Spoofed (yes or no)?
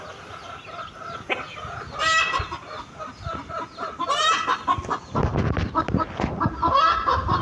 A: no